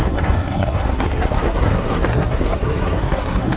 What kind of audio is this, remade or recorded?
remade